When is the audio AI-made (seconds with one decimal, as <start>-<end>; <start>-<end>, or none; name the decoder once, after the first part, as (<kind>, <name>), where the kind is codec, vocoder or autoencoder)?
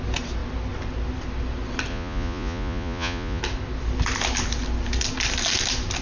1.9-3.4 (vocoder, Vocos)